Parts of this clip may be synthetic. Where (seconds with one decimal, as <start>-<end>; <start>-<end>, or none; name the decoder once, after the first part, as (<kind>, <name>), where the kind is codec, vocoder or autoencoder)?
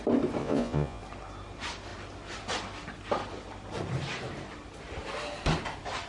0.4-1.0 (vocoder, Vocos)